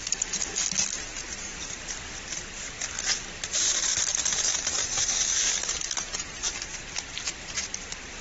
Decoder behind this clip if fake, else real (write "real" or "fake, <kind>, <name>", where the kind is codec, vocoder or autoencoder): real